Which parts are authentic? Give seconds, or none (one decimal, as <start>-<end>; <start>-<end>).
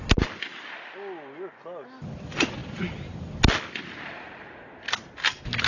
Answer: 0.0-5.7